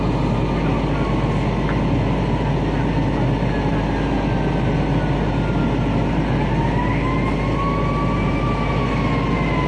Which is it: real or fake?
real